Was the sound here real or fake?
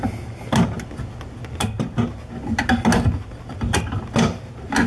real